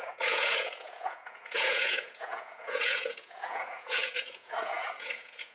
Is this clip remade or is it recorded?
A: remade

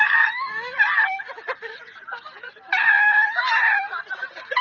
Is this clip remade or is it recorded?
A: recorded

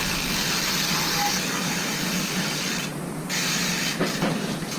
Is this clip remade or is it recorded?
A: recorded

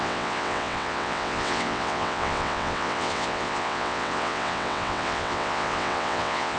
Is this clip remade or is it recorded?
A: remade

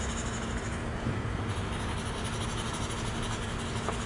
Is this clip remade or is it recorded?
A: remade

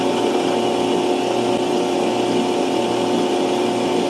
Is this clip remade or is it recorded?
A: recorded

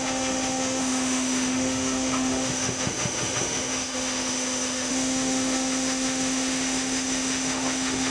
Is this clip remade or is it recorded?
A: remade